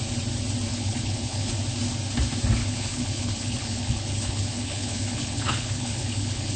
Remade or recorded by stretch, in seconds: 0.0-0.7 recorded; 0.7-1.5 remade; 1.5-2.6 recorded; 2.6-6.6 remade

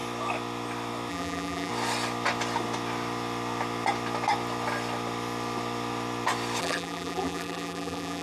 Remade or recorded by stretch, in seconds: 0.0-1.1 recorded; 1.1-1.7 remade; 1.7-6.6 recorded; 6.6-8.2 remade

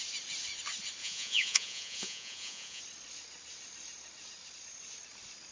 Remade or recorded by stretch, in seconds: 0.0-1.0 recorded; 1.0-2.8 remade; 2.8-5.5 recorded

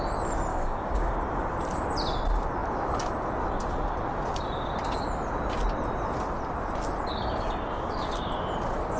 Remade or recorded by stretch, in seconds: 0.0-0.5 recorded; 0.5-1.1 remade; 1.1-9.0 recorded

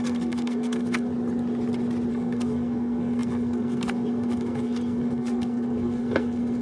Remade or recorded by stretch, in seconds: 0.0-1.1 remade; 1.1-2.1 recorded; 2.1-6.6 remade

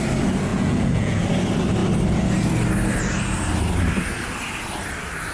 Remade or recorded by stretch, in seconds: 0.0-0.5 recorded; 0.5-1.3 remade; 1.3-5.3 recorded